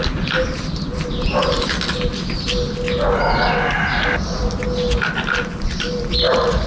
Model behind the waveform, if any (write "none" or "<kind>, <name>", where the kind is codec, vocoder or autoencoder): none